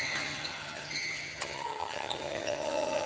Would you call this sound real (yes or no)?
no